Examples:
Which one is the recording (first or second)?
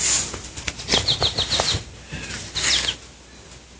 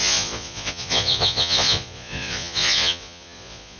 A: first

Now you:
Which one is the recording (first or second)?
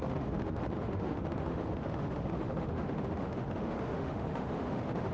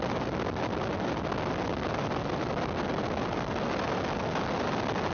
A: second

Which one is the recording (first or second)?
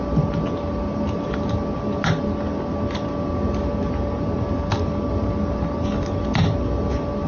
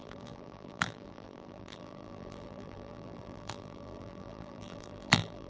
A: first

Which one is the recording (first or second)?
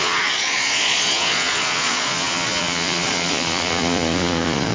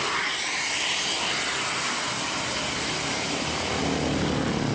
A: second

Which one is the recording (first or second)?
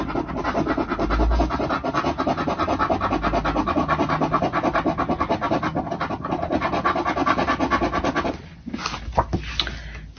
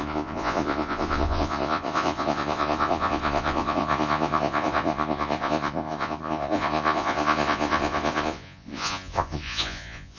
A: first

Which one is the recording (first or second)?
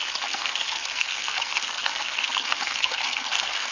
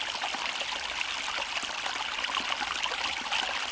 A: second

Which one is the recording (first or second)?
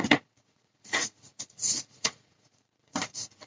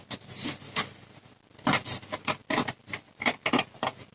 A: second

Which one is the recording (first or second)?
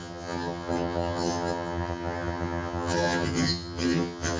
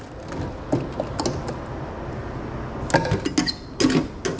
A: second